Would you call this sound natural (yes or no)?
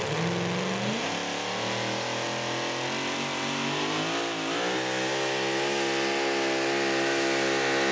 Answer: yes